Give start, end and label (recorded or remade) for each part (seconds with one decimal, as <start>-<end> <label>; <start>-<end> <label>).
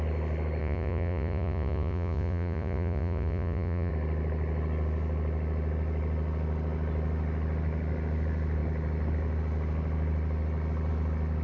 0.0-0.6 recorded; 0.6-3.9 remade; 3.9-11.4 recorded